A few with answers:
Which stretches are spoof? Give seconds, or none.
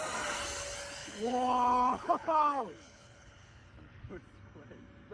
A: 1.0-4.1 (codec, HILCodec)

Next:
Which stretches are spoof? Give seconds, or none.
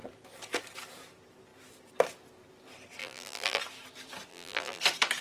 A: 3.0-3.6 (vocoder, BigVGAN v2); 4.3-4.8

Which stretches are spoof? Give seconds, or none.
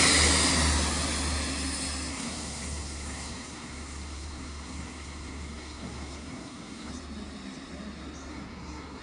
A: 2.1-6.9 (codec, SNAC); 8.3-9.0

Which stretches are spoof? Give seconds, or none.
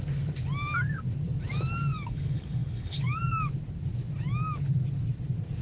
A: 1.9-3.4 (codec, DAC)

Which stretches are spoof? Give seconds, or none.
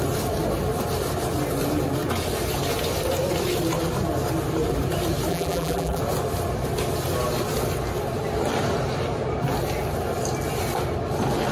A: 5.3-6.0 (vocoder, BigVGAN v2)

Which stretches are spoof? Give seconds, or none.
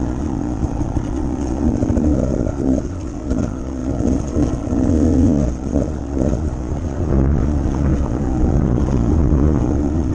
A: 0.0-10.1 (vocoder, Vocos)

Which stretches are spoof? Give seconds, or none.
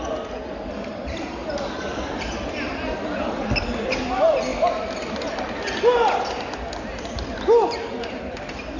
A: none